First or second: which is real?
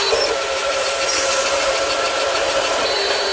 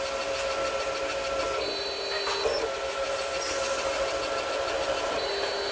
second